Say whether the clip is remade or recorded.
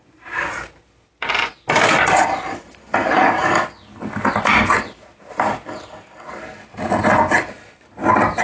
remade